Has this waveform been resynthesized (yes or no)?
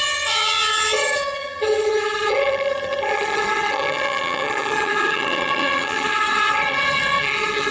yes